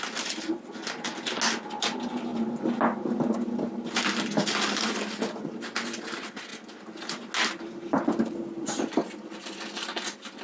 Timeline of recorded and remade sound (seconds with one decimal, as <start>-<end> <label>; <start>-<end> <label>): 0.0-10.4 recorded